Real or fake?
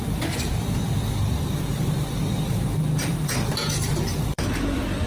fake